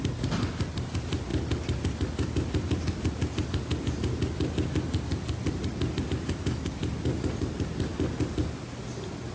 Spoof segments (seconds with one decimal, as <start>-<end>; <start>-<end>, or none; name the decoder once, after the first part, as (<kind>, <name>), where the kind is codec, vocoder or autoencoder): none